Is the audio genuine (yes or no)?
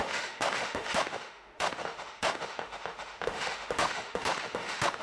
no